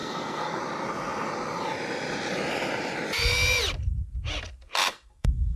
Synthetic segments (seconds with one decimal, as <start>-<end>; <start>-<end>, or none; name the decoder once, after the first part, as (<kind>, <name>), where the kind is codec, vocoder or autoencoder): 0.0-0.6 (codec, SNAC); 4.8-5.6